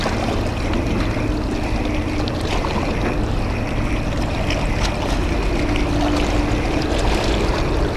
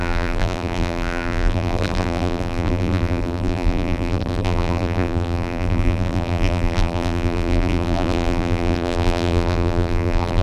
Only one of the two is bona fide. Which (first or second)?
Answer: first